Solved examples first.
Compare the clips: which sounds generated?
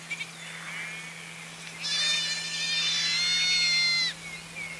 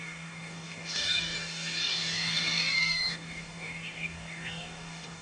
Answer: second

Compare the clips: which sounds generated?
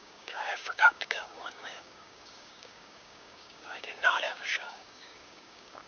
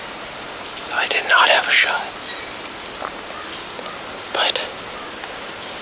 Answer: first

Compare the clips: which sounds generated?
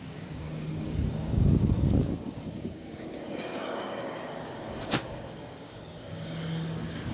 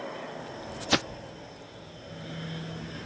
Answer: first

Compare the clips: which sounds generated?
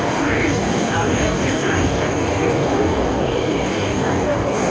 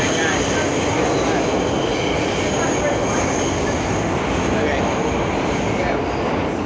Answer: first